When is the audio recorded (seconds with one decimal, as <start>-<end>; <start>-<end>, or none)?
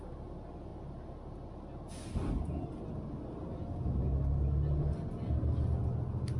0.0-6.4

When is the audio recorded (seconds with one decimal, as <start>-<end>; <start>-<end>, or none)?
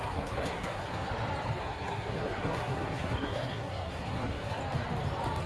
1.1-1.6; 4.6-5.5